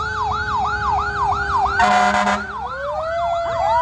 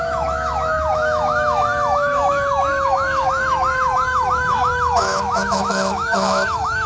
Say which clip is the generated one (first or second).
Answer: second